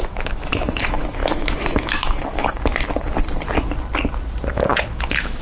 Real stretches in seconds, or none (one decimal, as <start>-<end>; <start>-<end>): 2.7-4.5